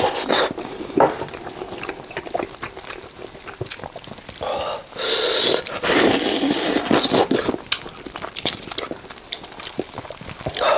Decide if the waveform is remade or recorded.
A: recorded